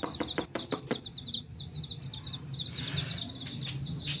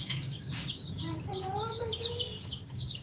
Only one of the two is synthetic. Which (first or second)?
second